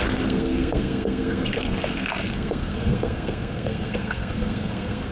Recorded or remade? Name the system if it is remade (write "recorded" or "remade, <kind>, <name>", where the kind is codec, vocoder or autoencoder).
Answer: remade, codec, SNAC